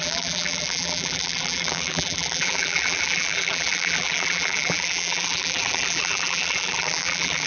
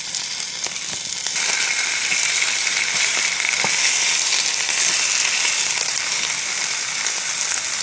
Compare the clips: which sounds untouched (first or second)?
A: second